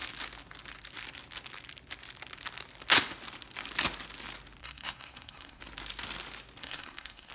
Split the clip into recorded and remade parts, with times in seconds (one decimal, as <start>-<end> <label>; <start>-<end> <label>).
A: 0.0-4.6 recorded; 4.6-5.6 remade; 5.6-6.6 recorded; 6.6-7.3 remade